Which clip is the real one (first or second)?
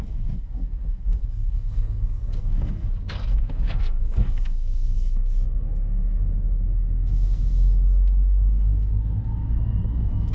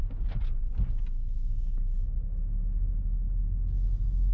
second